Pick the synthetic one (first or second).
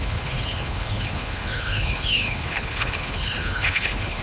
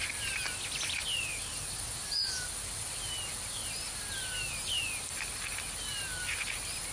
first